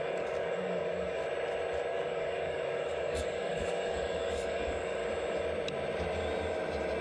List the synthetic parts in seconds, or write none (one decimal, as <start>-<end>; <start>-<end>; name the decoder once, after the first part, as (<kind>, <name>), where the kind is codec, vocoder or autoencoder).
0.0-1.2 (codec, DAC); 1.9-5.0